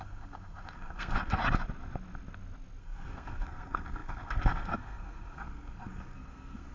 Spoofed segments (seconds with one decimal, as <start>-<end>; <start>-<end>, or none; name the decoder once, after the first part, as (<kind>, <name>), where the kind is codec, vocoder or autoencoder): 0.0-1.4 (codec, SNAC); 2.8-6.7